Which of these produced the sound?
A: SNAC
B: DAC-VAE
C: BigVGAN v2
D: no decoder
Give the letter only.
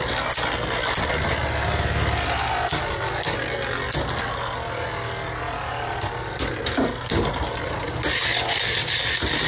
D